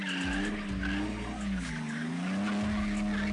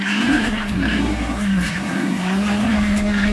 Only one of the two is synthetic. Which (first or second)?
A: second